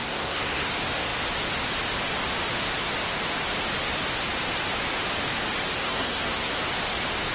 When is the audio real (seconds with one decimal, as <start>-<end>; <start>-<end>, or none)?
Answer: 0.7-5.8; 6.5-7.3